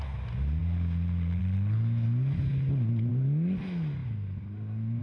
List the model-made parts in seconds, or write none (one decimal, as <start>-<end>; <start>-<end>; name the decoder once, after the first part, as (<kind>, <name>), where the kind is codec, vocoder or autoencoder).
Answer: none

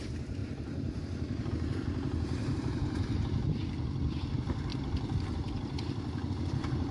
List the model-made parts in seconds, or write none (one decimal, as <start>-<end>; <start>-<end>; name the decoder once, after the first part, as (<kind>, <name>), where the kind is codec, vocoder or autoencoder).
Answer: 0.0-3.6 (vocoder, BigVGAN v2); 4.1-4.7; 6.3-6.9

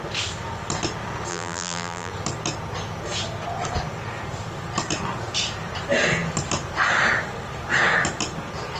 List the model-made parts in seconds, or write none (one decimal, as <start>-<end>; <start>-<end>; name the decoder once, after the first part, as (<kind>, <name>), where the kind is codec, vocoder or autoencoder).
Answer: 1.3-2.1 (vocoder, BigVGAN v2)